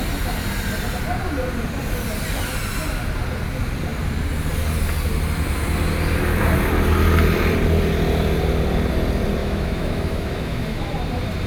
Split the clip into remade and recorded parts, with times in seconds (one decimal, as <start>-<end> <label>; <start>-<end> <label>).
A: 0.0-9.4 recorded; 9.4-10.9 remade; 10.9-11.5 recorded